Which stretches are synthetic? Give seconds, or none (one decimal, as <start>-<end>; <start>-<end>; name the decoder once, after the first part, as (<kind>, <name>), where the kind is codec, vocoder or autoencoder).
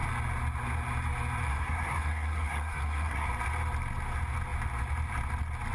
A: 1.5-3.3 (codec, SNAC)